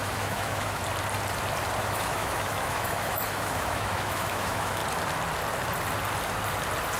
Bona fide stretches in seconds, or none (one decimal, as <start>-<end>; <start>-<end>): 0.8-1.8; 4.8-7.0